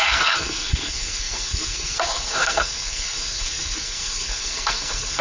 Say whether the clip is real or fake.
fake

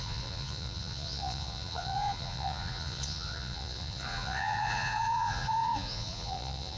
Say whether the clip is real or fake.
fake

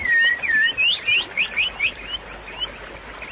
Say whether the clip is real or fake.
real